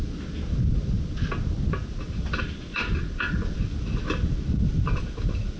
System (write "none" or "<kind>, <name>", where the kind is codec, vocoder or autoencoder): none